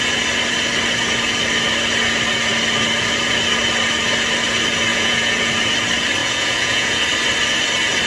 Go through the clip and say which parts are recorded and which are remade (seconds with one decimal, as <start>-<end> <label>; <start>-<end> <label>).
0.0-4.9 recorded; 4.9-5.5 remade; 5.5-6.2 recorded; 6.2-7.0 remade; 7.0-8.1 recorded